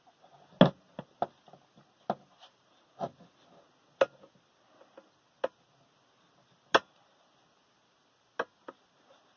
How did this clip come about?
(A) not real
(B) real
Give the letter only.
B